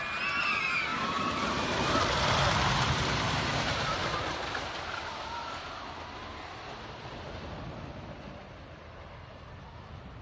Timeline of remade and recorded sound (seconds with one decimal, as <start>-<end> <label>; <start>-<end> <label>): 0.0-10.2 recorded